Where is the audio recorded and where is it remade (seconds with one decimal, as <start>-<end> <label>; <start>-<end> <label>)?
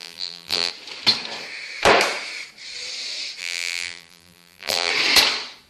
0.0-0.7 remade; 0.7-3.4 recorded; 3.4-4.9 remade; 4.9-5.7 recorded